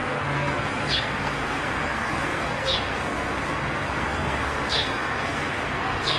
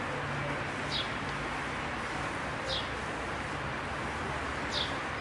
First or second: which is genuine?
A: second